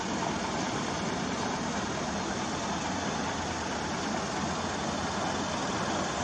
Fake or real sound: real